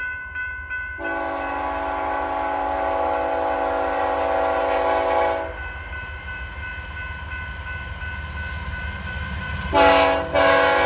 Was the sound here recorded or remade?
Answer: recorded